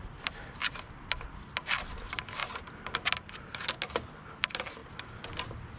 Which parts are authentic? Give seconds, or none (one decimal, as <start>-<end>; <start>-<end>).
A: 0.0-5.8